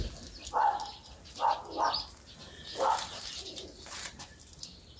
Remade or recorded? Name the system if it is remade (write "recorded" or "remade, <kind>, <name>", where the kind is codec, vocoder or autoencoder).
recorded